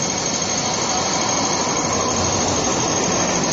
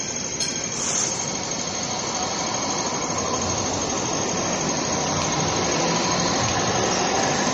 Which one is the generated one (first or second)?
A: second